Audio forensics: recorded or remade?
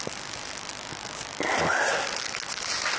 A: recorded